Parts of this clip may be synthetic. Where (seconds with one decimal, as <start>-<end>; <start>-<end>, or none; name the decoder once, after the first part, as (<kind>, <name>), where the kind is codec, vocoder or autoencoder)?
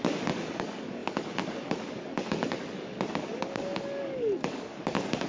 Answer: 0.0-5.3 (codec, DAC)